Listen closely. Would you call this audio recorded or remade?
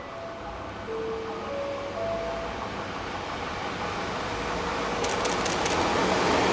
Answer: recorded